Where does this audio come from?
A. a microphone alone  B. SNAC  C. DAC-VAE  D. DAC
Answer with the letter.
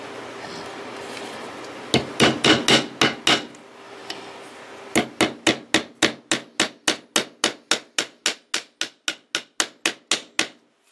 A